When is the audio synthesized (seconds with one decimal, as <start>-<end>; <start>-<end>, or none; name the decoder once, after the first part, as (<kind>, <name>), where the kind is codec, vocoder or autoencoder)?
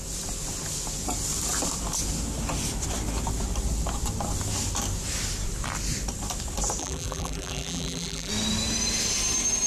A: 6.8-8.3 (vocoder, BigVGAN v2)